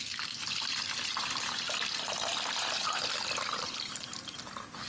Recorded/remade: recorded